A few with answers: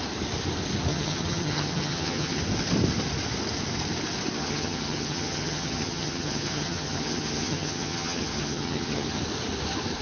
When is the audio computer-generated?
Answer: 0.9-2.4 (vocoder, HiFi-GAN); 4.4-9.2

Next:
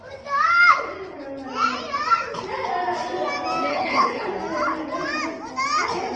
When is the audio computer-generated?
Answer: 3.7-4.3 (codec, HILCodec)

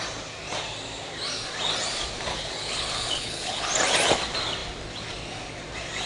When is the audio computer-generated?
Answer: 2.3-3.7 (codec, HILCodec)

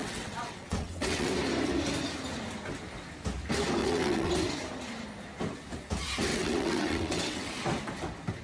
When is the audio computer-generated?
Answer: 0.0-1.3 (vocoder, WaveNeXt); 3.8-4.3; 6.3-7.5

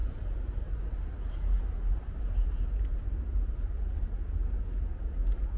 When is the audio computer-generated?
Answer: 0.0-0.8 (vocoder, BigVGAN v2); 1.9-3.0

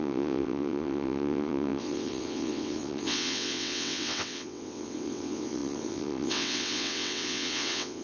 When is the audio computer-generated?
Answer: 0.0-8.0 (vocoder, WaveNeXt)